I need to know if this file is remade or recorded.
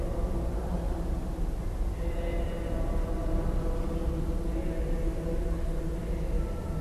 recorded